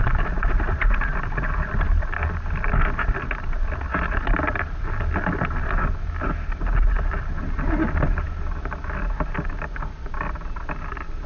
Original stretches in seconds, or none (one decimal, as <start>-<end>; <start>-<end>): 0.0-11.3